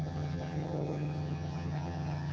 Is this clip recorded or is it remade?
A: remade